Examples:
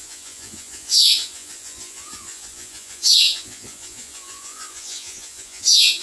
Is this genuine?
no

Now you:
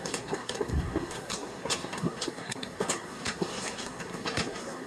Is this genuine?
no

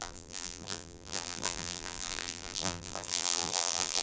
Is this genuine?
no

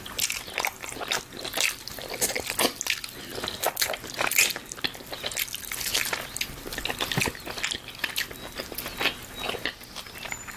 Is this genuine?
yes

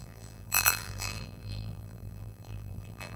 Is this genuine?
no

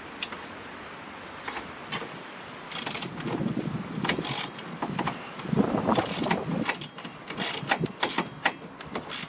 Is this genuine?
yes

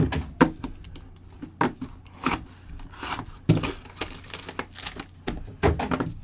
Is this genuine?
yes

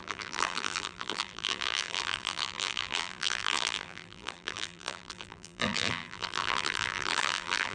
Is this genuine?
no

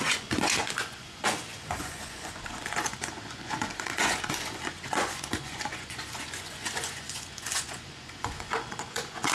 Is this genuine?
no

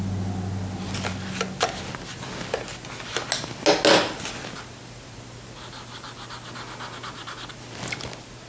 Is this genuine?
yes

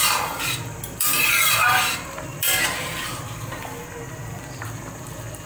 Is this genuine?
no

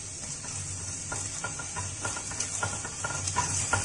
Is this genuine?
yes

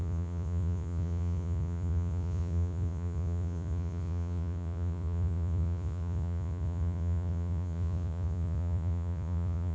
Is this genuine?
no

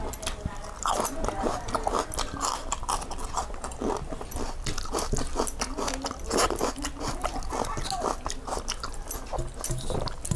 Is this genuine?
yes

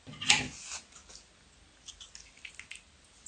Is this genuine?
yes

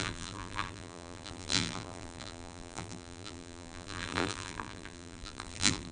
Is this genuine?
no